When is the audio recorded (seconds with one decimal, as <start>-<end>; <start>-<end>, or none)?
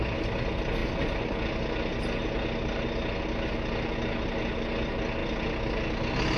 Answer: 0.0-6.4